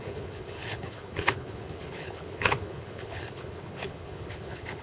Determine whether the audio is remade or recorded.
remade